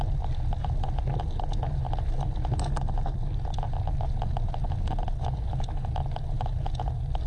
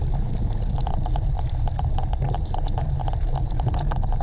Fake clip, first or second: second